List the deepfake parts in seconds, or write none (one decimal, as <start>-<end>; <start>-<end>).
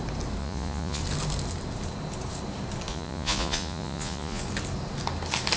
0.4-1.0; 2.9-4.4